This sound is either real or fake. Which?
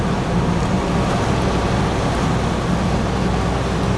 real